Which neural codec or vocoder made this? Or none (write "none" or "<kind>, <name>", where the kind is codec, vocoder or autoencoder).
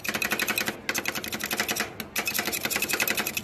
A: none